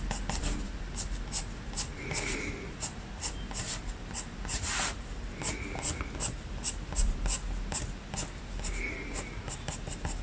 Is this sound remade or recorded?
recorded